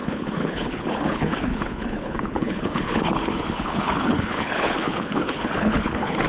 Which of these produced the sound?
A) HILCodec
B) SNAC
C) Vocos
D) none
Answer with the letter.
A